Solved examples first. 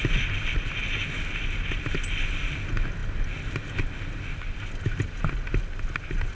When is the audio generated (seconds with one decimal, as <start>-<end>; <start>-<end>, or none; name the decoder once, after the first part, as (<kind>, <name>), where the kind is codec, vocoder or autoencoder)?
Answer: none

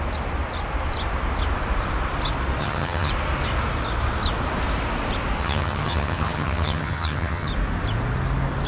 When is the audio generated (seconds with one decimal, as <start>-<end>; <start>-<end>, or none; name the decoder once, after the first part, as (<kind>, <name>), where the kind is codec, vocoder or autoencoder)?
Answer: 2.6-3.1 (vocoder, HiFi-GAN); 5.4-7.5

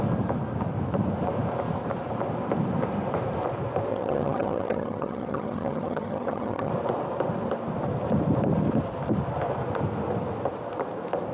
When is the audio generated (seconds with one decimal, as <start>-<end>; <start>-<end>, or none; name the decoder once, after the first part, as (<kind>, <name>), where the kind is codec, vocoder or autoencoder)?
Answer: 3.9-6.7 (vocoder, HiFi-GAN)

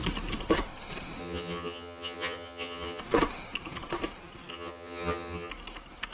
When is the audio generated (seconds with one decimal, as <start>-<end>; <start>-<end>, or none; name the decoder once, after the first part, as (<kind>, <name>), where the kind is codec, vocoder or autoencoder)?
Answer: 1.2-3.0 (vocoder, HiFi-GAN); 4.5-5.5